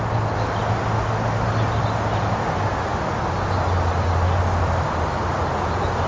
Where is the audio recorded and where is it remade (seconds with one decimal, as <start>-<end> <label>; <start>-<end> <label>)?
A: 0.0-6.1 recorded